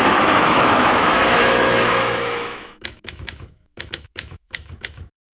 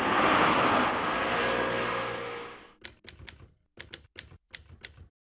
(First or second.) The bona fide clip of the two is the second